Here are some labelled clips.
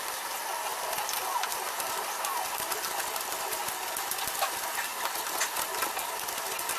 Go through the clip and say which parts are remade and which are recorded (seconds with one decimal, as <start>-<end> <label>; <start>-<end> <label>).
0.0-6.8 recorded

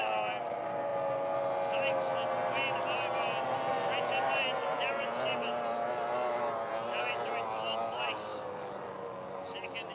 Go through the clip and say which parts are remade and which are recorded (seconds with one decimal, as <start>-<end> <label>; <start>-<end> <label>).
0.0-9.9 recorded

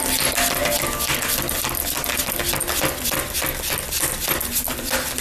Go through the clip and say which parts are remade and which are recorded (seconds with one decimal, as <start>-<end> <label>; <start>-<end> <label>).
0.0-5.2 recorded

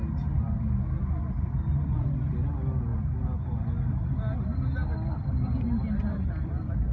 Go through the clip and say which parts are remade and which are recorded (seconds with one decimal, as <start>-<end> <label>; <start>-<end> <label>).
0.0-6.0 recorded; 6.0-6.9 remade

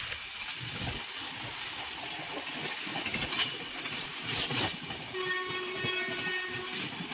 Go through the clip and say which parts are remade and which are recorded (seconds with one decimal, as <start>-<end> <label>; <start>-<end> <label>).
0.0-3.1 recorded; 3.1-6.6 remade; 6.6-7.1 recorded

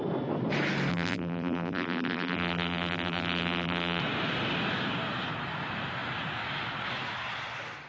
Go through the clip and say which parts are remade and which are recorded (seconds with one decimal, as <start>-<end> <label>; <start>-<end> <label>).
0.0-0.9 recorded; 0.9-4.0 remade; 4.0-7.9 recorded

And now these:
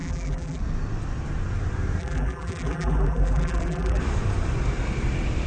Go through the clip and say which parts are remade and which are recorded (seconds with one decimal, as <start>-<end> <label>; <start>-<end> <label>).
0.0-0.6 remade; 0.6-2.0 recorded; 2.0-4.0 remade; 4.0-5.5 recorded